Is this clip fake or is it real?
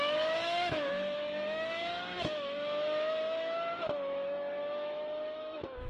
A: fake